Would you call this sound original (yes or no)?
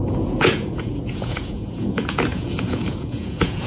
no